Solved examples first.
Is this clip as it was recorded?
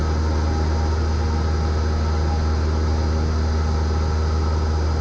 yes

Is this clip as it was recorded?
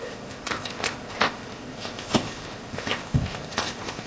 no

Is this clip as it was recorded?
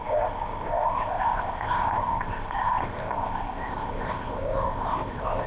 no